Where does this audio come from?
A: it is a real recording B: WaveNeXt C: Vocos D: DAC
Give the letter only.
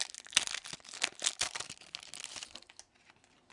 A